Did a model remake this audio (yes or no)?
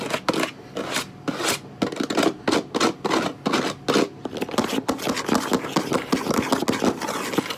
no